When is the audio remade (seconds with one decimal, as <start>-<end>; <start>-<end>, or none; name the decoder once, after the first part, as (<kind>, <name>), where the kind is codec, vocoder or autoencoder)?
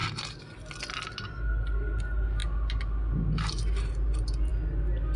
none